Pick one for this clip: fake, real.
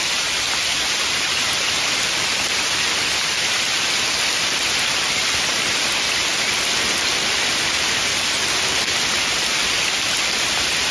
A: real